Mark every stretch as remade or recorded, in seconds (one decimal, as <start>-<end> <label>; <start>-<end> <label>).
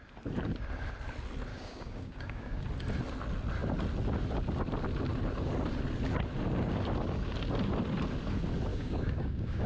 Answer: 0.0-1.5 recorded; 1.5-2.6 remade; 2.6-8.7 recorded; 8.7-9.7 remade